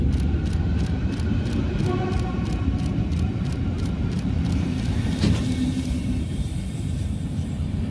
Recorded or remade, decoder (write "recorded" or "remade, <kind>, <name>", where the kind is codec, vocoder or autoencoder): recorded